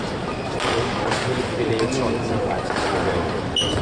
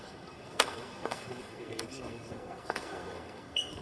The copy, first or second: second